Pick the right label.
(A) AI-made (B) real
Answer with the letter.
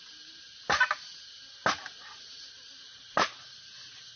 B